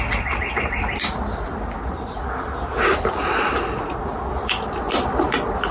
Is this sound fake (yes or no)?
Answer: no